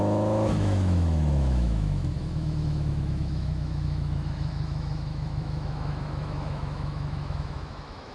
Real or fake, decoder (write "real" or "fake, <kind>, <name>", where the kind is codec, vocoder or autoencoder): fake, autoencoder, DAC-VAE